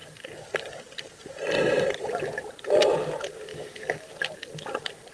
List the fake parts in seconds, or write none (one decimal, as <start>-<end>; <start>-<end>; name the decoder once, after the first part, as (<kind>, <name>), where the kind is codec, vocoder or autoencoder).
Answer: 3.5-4.1 (autoencoder, DAC-VAE)